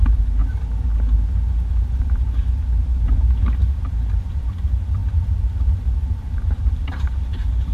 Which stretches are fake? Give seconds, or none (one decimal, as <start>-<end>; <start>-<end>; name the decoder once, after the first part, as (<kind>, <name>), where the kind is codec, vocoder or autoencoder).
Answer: 0.0-0.4 (vocoder, BigVGAN v2); 1.7-5.0; 5.9-7.7